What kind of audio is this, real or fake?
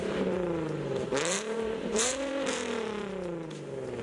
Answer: fake